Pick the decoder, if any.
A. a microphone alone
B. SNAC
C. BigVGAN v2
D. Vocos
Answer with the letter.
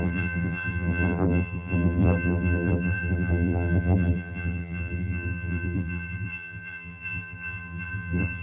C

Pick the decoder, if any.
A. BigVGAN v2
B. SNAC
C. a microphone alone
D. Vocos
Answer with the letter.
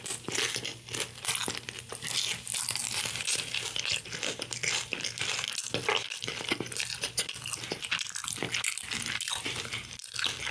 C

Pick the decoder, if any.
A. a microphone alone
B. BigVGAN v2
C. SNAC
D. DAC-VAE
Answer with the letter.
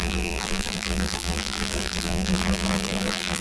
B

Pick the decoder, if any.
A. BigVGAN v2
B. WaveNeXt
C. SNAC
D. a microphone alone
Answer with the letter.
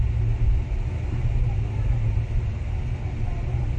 D